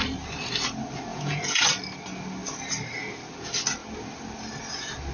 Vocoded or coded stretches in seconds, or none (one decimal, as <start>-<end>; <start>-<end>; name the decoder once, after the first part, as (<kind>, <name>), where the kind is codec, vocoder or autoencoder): 1.1-1.6 (vocoder, Vocos)